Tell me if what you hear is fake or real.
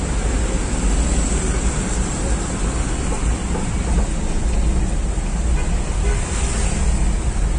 real